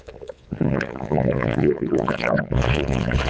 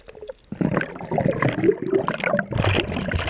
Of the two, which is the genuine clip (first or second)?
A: second